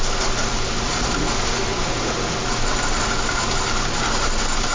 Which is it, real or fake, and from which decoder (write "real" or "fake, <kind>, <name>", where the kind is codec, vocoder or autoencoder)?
real